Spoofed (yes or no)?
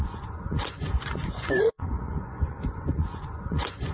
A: yes